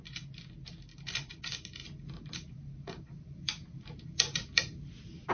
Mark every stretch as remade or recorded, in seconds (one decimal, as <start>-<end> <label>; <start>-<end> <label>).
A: 0.0-0.9 recorded; 0.9-1.4 remade; 1.4-1.8 recorded; 1.8-5.3 remade